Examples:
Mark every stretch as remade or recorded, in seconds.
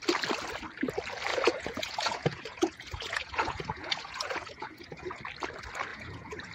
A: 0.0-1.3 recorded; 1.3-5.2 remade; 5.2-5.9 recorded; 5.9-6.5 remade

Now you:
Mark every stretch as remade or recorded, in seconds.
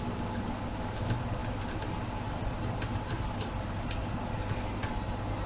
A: 0.0-5.5 recorded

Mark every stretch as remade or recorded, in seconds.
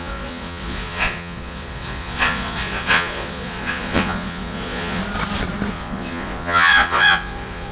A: 0.0-5.0 remade; 5.0-5.7 recorded; 5.7-7.7 remade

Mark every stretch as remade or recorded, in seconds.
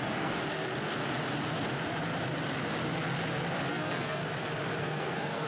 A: 0.0-0.4 remade; 0.4-3.7 recorded; 3.7-4.2 remade; 4.2-4.8 recorded; 4.8-5.5 remade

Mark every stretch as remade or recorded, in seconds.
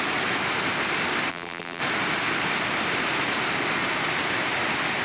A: 0.0-1.3 recorded; 1.3-1.8 remade; 1.8-5.0 recorded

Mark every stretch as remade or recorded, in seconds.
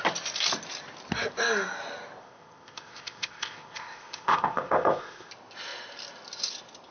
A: 0.0-2.2 recorded; 2.2-5.3 remade; 5.3-6.9 recorded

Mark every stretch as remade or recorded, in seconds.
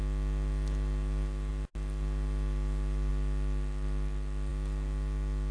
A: 0.0-5.5 recorded